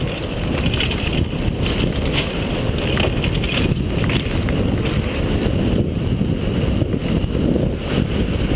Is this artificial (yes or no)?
no